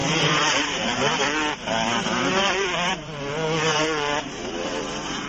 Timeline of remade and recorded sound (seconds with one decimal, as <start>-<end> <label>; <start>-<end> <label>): 0.0-5.3 remade